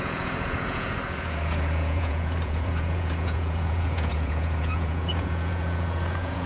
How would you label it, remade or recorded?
remade